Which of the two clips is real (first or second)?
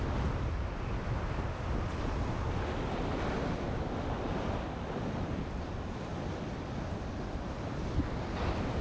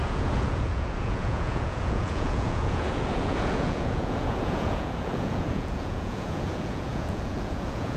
first